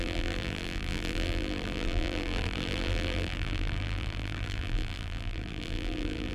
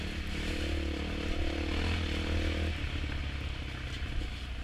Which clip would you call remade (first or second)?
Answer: first